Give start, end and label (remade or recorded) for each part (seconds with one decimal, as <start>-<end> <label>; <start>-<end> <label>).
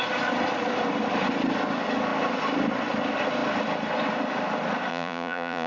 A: 0.0-4.9 recorded; 4.9-5.7 remade